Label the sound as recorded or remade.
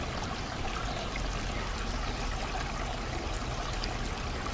recorded